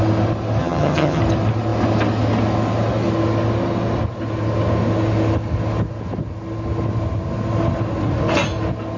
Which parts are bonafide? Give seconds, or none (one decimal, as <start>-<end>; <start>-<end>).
0.0-0.6; 1.2-9.0

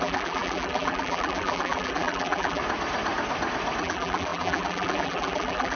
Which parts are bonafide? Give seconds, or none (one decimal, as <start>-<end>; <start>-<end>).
2.6-3.8

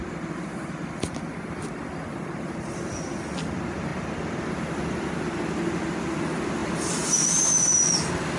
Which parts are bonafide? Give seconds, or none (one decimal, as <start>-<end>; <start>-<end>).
0.0-8.4

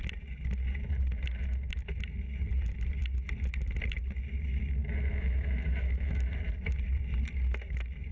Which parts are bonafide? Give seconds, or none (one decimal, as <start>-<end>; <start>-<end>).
0.0-4.8; 6.3-8.1

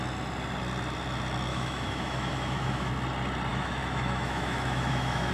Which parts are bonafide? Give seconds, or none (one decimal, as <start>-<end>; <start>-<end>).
0.0-1.5; 2.9-3.5

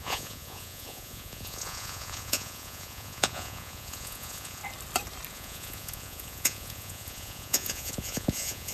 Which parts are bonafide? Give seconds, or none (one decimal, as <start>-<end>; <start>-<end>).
4.6-5.3

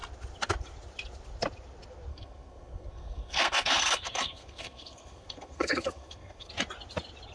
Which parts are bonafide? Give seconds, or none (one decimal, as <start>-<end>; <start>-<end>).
0.0-2.1; 6.5-7.3

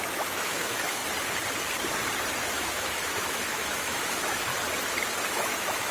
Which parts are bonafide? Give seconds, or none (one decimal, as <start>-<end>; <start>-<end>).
1.0-2.4; 4.5-5.2